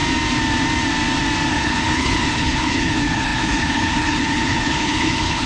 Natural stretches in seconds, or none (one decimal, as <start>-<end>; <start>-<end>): 0.0-1.5